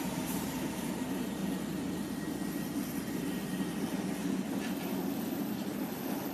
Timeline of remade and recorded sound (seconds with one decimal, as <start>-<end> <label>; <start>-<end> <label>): 0.0-1.4 remade; 1.4-5.2 recorded; 5.2-6.3 remade